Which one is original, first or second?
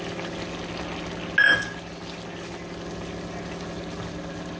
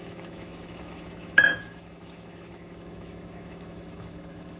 first